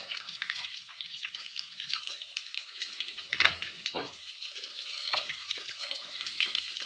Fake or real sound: fake